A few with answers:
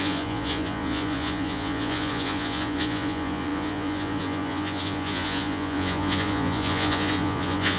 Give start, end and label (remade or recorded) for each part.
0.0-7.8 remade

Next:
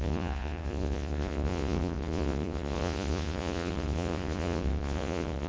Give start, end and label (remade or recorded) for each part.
0.0-5.5 remade

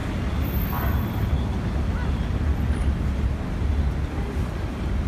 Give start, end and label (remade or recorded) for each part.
0.0-5.1 recorded